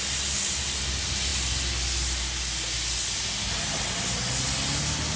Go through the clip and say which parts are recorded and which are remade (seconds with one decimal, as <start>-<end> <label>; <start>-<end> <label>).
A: 0.0-5.2 recorded